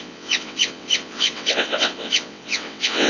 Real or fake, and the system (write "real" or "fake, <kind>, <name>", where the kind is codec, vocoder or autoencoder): fake, vocoder, WaveNeXt